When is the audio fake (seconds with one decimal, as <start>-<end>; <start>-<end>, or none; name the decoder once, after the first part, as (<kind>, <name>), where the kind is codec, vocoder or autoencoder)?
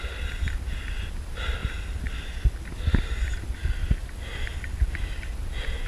none